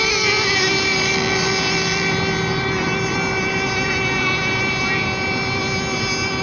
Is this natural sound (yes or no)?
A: yes